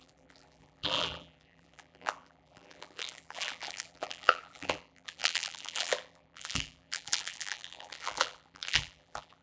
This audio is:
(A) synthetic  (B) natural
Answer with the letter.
A